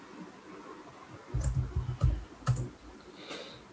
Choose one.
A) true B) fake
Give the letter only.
A